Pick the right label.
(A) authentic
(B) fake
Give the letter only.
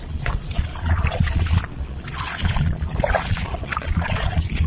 B